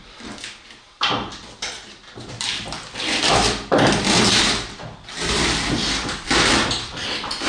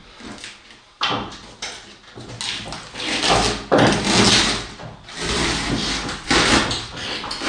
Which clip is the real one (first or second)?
second